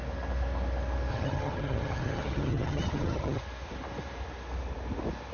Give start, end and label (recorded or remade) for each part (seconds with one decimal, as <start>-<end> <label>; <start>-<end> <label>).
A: 0.0-1.1 recorded; 1.1-3.4 remade; 3.4-5.3 recorded